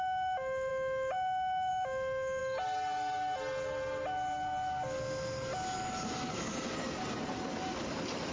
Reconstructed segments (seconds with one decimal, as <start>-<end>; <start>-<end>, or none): none